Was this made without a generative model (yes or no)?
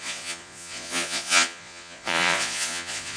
no